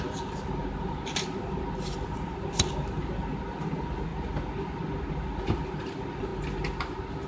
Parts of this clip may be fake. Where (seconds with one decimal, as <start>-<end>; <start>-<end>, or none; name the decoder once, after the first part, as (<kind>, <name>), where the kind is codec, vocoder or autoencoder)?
none